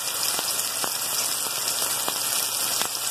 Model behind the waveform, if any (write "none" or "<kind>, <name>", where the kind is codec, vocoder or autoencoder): none